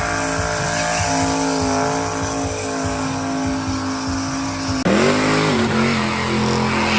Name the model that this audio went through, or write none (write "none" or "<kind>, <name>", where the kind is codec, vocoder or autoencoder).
none